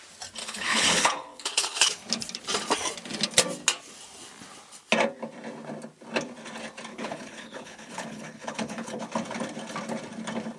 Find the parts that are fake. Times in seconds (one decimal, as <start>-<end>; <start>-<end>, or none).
0.4-2.0; 6.9-9.0